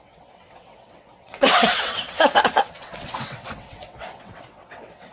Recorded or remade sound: remade